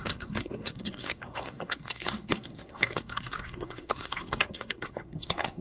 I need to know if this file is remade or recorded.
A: remade